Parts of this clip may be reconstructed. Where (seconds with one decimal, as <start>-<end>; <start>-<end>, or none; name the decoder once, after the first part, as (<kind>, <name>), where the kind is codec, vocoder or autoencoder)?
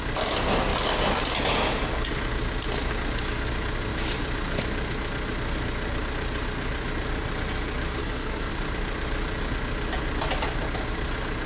8.0-8.5 (codec, SNAC)